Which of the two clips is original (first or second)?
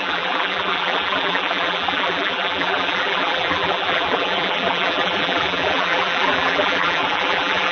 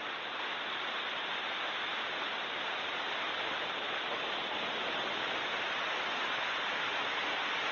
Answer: second